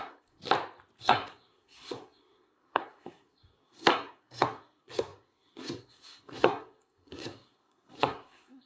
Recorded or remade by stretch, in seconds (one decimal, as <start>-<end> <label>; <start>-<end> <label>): 0.0-0.4 remade; 0.4-1.0 recorded; 1.0-8.7 remade